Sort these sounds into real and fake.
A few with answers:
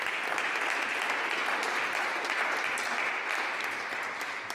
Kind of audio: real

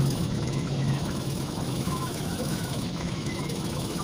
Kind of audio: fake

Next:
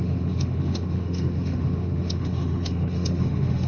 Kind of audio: fake